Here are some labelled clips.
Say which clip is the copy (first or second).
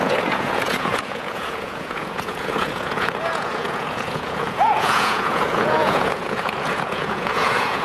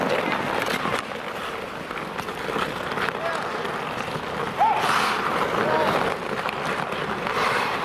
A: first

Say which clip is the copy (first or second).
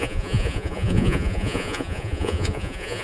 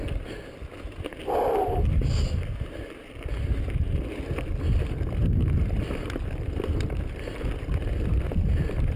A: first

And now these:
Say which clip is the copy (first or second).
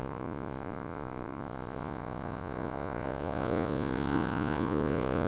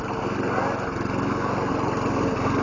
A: first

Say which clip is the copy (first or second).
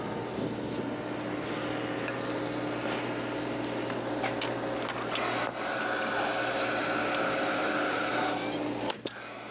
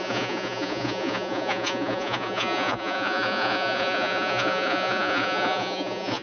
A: second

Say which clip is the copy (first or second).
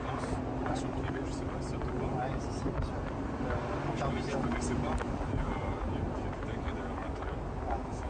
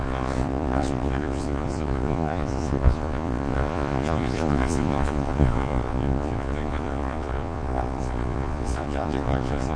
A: second